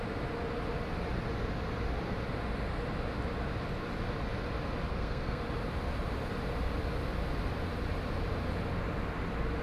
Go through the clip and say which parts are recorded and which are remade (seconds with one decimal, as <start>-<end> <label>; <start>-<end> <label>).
0.0-4.9 recorded; 4.9-5.4 remade; 5.4-9.6 recorded